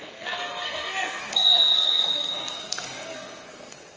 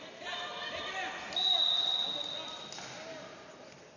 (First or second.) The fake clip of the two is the first